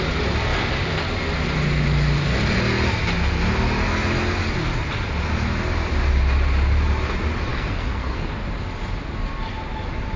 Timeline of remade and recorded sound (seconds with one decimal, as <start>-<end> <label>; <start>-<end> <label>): 0.0-7.5 recorded; 7.5-8.3 remade; 8.3-10.2 recorded